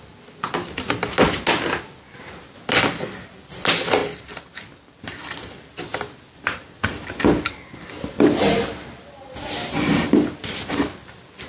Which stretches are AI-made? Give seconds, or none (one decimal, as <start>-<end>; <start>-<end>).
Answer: none

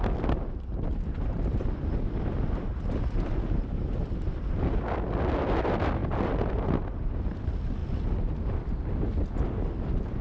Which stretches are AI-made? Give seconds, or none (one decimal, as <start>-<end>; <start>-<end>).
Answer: 0.7-4.7; 6.0-6.5; 7.8-8.4

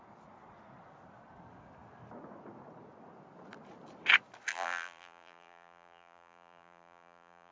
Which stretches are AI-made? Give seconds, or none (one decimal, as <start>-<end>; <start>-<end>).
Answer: 4.5-7.5

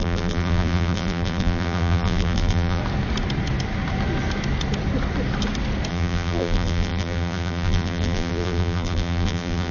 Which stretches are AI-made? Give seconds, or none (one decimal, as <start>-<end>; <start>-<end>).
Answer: 0.0-2.8; 5.9-9.7